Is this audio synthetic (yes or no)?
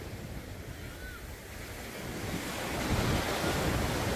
no